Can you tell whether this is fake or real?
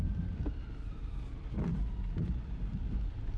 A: real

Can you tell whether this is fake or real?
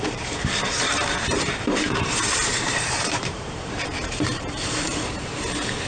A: fake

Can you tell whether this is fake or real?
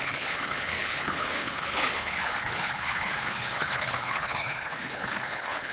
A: fake